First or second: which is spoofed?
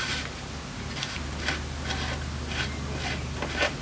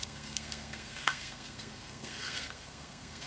second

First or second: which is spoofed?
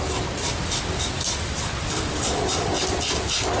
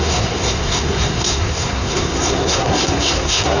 second